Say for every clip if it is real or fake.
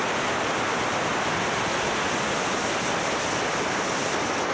real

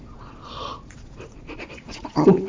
fake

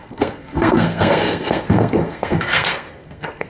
fake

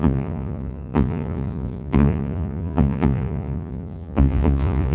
fake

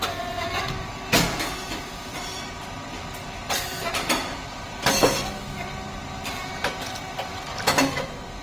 real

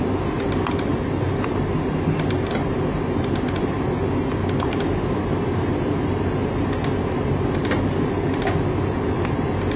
real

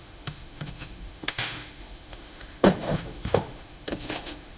fake